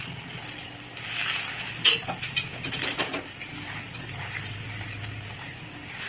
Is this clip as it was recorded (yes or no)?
yes